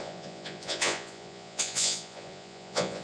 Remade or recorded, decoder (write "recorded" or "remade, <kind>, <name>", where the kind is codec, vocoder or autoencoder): remade, vocoder, Vocos